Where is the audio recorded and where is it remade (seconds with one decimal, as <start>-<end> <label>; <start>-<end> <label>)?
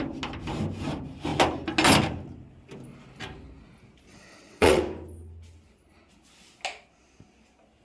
0.0-4.1 recorded; 4.1-4.8 remade; 4.8-7.8 recorded